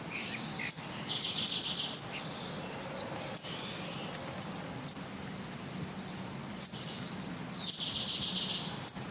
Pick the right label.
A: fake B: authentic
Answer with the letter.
B